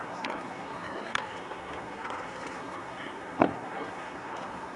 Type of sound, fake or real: fake